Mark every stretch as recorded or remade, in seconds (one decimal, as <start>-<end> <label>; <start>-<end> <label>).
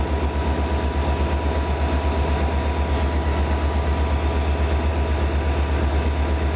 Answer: 0.0-6.6 recorded